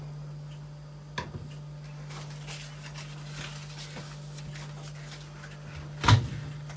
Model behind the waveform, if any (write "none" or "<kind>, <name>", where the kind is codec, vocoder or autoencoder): none